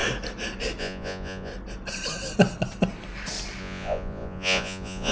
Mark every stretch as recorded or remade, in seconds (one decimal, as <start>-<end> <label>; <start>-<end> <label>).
0.0-0.8 recorded; 0.8-1.5 remade; 1.5-3.6 recorded; 3.6-5.1 remade